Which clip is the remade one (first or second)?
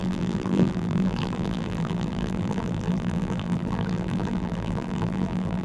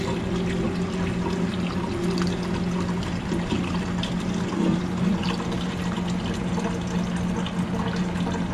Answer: first